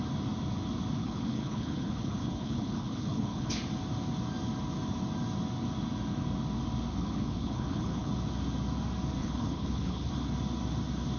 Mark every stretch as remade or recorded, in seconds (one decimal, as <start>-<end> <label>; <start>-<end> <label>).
0.0-1.0 recorded; 1.0-3.6 remade; 3.6-6.9 recorded; 6.9-8.1 remade; 8.1-9.2 recorded; 9.2-10.1 remade; 10.1-11.2 recorded